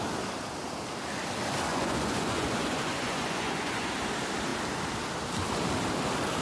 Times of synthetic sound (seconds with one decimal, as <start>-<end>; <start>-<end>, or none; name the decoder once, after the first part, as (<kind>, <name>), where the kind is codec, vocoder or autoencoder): 1.7-3.9 (vocoder, Vocos)